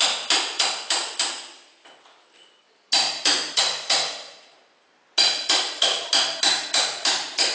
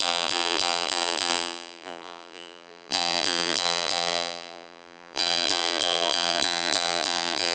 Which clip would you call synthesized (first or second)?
second